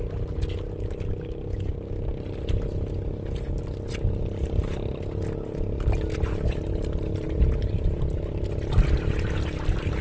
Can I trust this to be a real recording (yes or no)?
yes